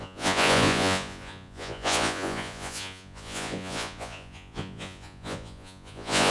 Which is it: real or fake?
fake